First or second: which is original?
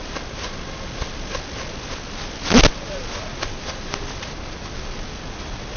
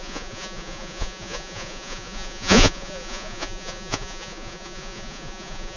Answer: first